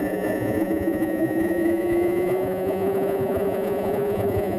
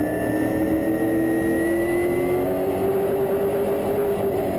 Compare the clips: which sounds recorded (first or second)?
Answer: second